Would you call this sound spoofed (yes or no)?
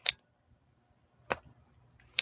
yes